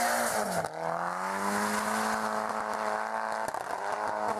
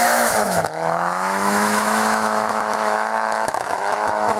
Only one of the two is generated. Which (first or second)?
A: second